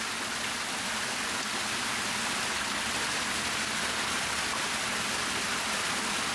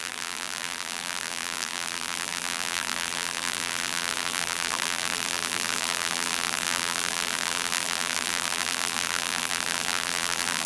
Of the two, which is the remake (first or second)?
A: second